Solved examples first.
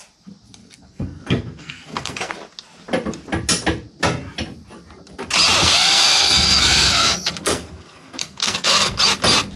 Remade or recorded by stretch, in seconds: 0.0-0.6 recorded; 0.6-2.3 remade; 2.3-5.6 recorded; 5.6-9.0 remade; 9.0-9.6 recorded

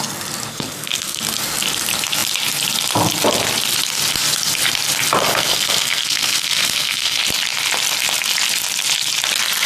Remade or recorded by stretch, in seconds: 0.0-0.5 recorded; 0.5-1.2 remade; 1.2-5.3 recorded; 5.3-7.2 remade; 7.2-9.7 recorded

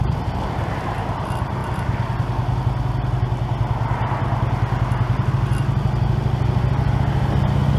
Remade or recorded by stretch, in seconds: 0.0-7.8 recorded

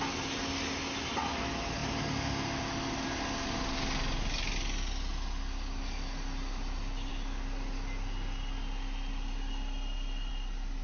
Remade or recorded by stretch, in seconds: 0.0-10.8 recorded

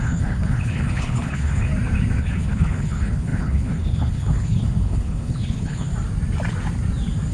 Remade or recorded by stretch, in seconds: 0.0-1.7 remade; 1.7-2.2 recorded; 2.2-5.9 remade; 5.9-7.3 recorded

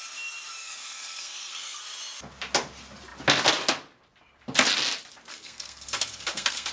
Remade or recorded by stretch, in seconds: 0.0-0.6 recorded; 0.6-1.8 remade; 1.8-5.3 recorded; 5.3-6.7 remade

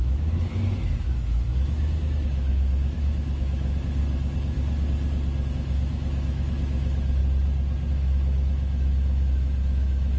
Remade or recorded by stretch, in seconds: 0.0-4.0 remade; 4.0-5.5 recorded; 5.5-7.2 remade; 7.2-7.9 recorded; 7.9-10.2 remade